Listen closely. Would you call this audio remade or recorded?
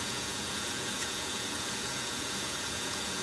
remade